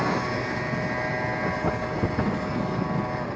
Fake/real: real